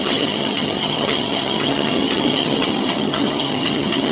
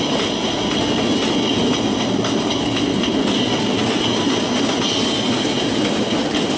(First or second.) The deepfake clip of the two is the first